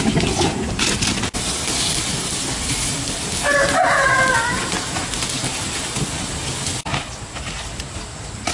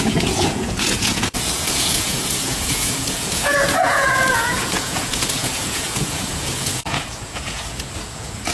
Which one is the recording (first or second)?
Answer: first